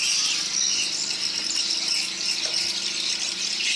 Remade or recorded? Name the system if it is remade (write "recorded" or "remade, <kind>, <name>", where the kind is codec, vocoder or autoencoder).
recorded